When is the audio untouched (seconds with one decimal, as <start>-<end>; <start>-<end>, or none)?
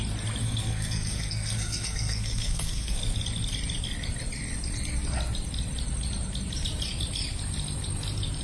0.0-0.4; 3.0-8.4